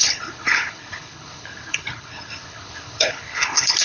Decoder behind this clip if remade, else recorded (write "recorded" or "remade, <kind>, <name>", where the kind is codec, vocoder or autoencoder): remade, codec, HILCodec